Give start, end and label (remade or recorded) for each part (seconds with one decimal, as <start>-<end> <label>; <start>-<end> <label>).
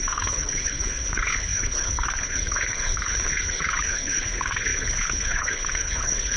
0.0-6.4 remade